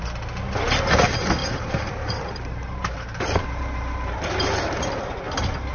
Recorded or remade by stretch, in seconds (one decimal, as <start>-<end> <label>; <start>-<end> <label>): 0.0-1.4 recorded; 1.4-4.8 remade; 4.8-5.7 recorded